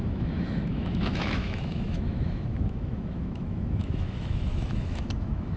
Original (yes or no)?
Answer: no